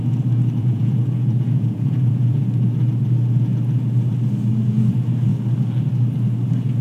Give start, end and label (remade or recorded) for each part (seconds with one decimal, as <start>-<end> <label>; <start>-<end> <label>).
0.0-0.6 recorded; 0.6-2.4 remade; 2.4-6.8 recorded